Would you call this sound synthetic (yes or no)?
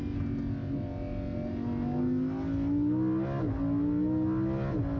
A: no